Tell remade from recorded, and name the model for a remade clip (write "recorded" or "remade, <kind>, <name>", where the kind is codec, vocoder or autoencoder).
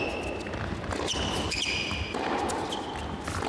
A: recorded